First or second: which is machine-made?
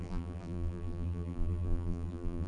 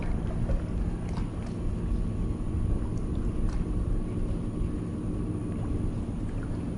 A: first